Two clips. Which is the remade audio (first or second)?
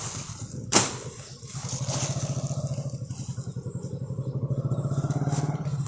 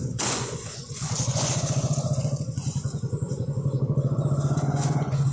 second